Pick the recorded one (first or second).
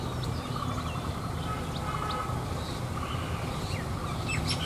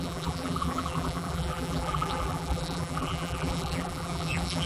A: first